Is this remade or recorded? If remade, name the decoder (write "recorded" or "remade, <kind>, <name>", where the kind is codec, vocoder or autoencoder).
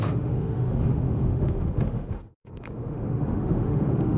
remade, autoencoder, DAC-VAE